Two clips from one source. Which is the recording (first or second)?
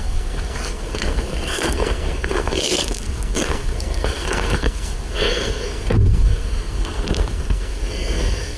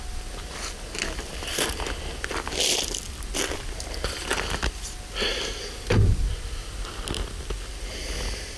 second